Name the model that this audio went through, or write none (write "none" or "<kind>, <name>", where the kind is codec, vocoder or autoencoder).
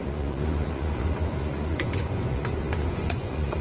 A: vocoder, Vocos